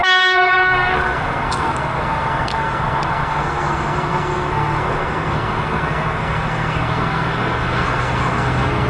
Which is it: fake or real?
fake